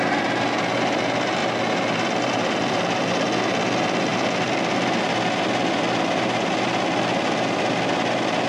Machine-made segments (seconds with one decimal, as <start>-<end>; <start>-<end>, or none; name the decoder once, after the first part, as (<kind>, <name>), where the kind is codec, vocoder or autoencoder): 1.4-3.1 (vocoder, BigVGAN v2); 4.1-5.2